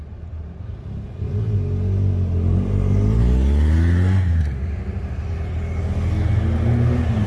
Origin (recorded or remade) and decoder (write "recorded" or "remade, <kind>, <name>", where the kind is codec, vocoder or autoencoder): recorded